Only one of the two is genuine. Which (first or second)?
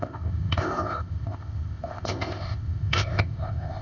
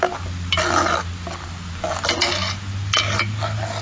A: second